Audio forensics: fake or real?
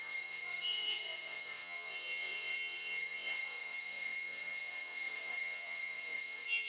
fake